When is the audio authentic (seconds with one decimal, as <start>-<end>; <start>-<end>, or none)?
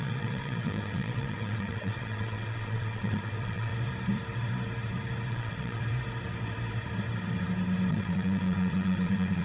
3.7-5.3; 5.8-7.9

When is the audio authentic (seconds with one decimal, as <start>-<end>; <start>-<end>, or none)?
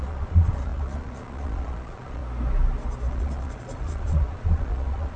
2.2-3.1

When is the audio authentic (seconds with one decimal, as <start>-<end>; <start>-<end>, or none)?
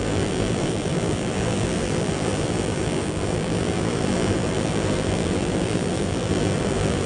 none